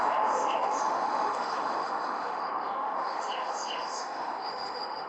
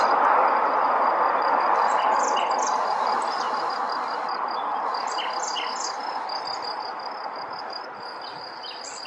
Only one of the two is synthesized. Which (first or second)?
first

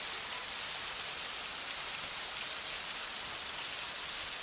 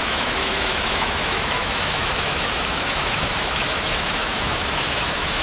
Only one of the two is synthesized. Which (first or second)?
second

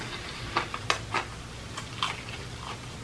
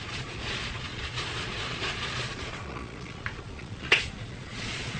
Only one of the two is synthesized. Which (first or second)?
second